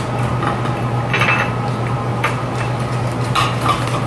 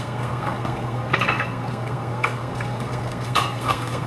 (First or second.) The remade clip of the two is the second